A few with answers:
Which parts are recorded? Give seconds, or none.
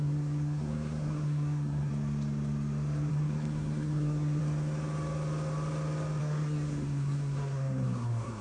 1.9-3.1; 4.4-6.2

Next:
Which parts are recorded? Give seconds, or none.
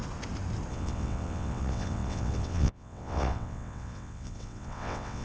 0.0-0.7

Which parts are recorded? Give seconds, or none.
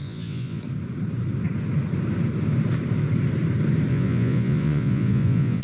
0.6-3.9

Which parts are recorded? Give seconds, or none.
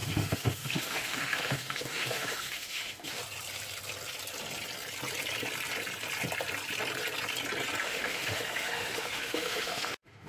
3.2-7.8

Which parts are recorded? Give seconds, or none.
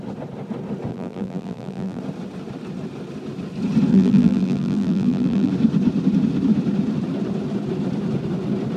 0.0-0.9; 2.0-3.9; 5.5-8.8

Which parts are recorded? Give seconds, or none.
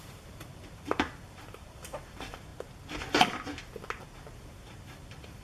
2.5-4.0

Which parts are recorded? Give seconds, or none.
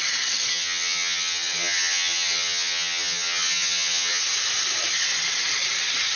0.0-0.5; 4.2-6.2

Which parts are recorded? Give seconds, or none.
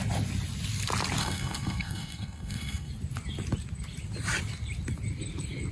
0.0-1.2; 2.9-5.7